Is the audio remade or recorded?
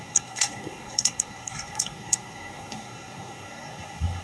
remade